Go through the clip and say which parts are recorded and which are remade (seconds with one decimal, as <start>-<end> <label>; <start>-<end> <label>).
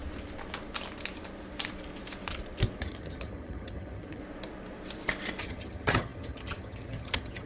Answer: 0.0-2.8 recorded; 2.8-4.2 remade; 4.2-5.4 recorded; 5.4-7.5 remade